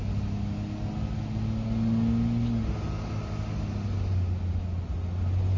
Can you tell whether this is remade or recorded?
recorded